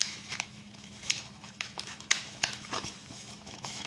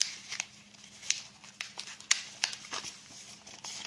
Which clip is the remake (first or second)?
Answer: first